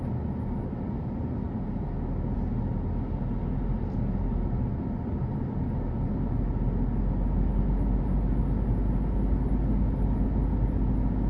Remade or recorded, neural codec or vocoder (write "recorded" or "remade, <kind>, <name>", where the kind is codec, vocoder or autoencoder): recorded